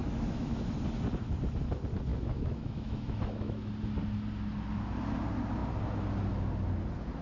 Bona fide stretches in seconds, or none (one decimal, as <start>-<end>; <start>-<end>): 0.7-2.1; 3.7-7.2